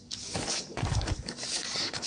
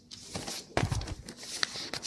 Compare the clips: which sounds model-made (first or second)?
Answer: first